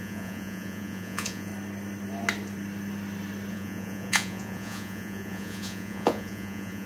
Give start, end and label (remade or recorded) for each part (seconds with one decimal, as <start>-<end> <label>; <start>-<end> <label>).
0.0-1.5 remade; 1.5-3.5 recorded; 3.5-6.9 remade